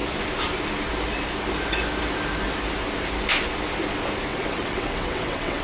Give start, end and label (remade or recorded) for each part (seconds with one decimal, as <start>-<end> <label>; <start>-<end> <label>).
0.0-4.3 recorded; 4.3-5.6 remade